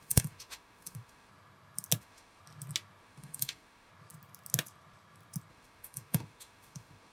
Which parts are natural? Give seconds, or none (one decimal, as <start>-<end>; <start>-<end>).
1.3-2.0; 2.4-3.0; 3.9-5.5